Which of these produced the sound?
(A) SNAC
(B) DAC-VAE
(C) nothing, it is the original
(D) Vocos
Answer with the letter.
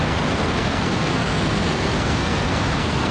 A